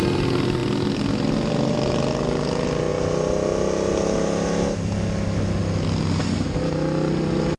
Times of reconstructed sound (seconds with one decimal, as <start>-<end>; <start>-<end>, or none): none